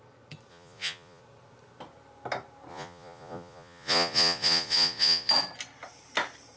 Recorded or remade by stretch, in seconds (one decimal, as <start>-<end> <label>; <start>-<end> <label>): 0.0-0.5 recorded; 0.5-1.2 remade; 1.2-2.7 recorded; 2.7-5.3 remade; 5.3-6.6 recorded